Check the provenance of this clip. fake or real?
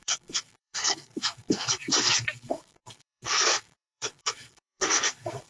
fake